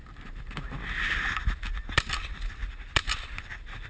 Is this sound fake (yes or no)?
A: no